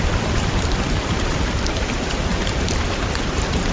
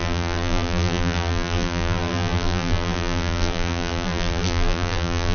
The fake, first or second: second